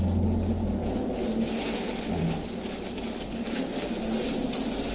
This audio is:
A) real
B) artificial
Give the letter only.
A